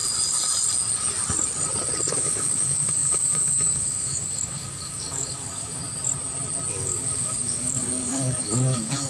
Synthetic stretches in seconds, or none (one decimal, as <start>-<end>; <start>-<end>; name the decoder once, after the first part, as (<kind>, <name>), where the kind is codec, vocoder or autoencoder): 2.1-5.8 (codec, DAC); 6.7-9.1